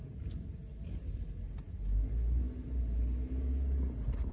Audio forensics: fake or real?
real